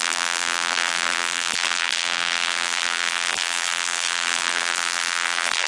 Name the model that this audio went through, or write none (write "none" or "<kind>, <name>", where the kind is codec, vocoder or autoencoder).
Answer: vocoder, BigVGAN v2